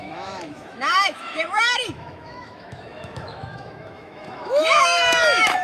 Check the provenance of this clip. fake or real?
fake